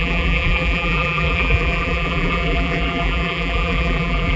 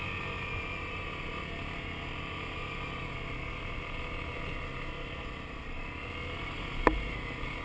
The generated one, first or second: first